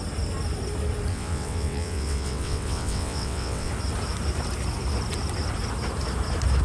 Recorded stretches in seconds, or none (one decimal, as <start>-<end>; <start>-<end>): 0.0-1.1; 3.7-6.6